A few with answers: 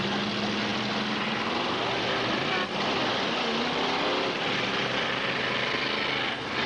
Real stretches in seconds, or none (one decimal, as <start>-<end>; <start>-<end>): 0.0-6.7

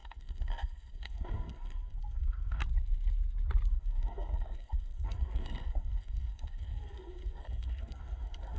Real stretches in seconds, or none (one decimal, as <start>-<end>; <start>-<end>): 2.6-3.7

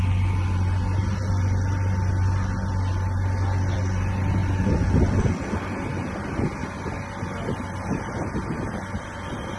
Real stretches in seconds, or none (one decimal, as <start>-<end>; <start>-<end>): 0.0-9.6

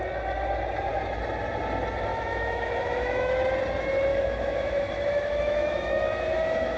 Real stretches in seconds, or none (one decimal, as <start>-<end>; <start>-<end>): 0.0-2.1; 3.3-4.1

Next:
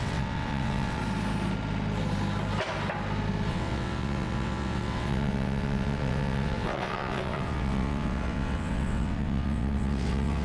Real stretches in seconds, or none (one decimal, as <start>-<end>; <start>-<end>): 1.0-3.5

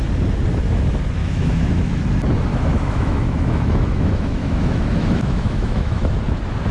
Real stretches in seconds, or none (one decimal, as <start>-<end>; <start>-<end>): 0.0-1.2; 2.0-2.5; 6.1-6.7

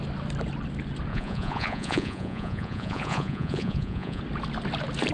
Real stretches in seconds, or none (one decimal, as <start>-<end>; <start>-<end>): 0.0-1.1; 4.2-5.1

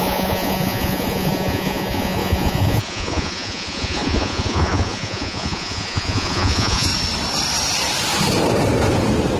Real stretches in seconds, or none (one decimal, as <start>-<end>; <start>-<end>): 6.9-9.4